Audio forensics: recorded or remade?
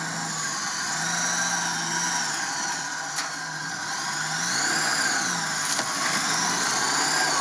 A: recorded